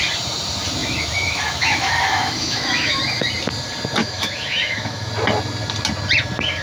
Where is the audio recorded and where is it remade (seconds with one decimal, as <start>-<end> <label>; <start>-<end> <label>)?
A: 0.0-0.8 recorded; 0.8-3.0 remade; 3.0-4.0 recorded; 4.0-5.1 remade; 5.1-6.6 recorded